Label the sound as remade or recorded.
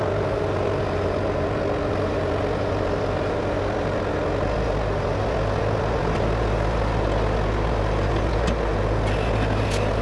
recorded